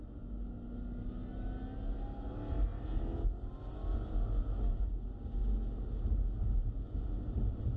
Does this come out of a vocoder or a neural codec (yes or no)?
no